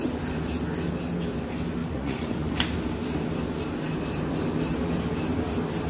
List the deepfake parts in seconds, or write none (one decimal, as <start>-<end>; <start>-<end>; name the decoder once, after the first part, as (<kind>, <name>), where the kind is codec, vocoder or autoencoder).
1.8-2.5 (vocoder, Vocos)